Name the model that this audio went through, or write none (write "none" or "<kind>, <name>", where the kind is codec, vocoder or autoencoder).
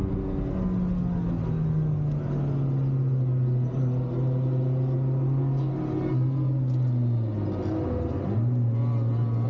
none